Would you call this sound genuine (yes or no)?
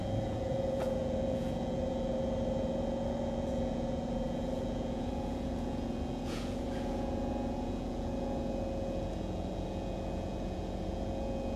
no